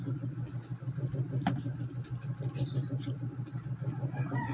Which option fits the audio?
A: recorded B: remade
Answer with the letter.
A